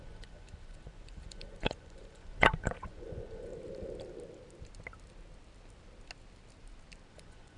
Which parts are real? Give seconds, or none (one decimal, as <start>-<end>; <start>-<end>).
3.5-7.1